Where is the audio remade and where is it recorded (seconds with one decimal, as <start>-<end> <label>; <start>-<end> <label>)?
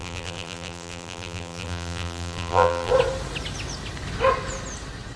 0.0-2.9 remade; 2.9-5.2 recorded